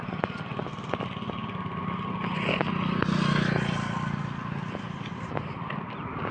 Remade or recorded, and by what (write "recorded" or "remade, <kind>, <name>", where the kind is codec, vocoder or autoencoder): recorded